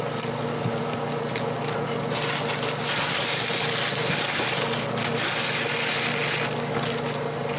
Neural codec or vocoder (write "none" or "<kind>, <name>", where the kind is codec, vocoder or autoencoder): none